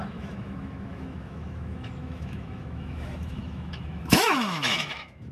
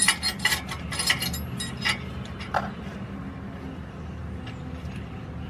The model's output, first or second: first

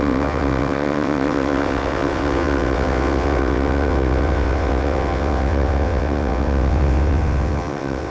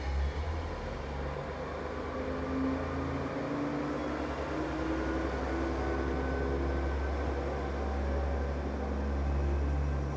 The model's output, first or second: first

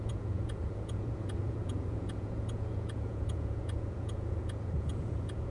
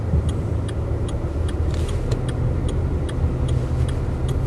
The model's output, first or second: first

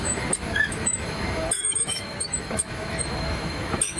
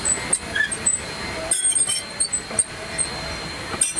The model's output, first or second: first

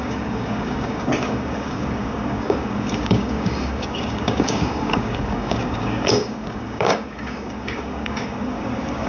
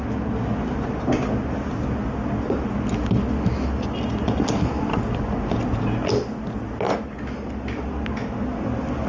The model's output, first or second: first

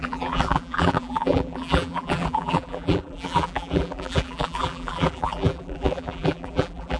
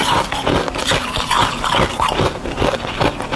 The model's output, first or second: first